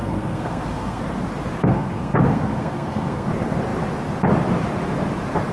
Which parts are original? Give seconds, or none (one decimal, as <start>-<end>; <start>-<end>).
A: 1.0-1.6; 3.3-5.5

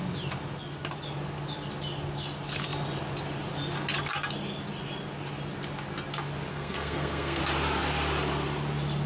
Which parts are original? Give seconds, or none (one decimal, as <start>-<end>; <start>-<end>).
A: 0.0-6.5; 7.4-9.1

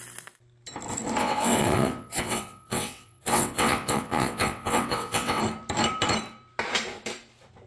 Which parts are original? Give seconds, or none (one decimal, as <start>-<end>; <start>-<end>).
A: 0.0-1.2; 5.4-7.7

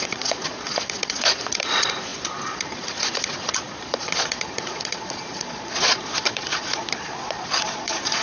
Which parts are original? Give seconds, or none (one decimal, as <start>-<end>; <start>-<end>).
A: none

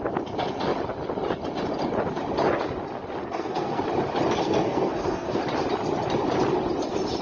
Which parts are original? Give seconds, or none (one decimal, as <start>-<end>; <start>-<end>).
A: 0.0-3.2; 3.8-4.4; 5.4-7.2